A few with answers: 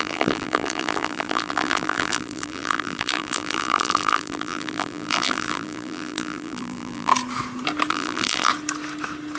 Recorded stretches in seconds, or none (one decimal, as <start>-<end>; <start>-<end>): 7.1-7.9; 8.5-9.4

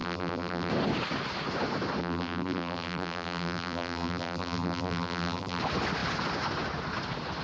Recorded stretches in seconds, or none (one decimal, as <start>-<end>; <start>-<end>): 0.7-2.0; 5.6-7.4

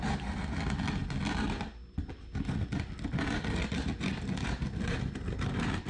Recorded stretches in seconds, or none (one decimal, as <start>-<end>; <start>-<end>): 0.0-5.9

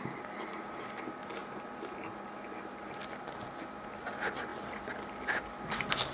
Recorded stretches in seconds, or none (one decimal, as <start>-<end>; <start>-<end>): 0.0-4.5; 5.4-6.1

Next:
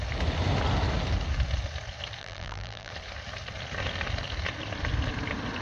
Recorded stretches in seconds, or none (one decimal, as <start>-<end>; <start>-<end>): 0.0-2.2; 2.9-5.6